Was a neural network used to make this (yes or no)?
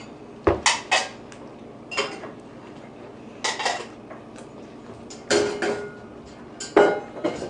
no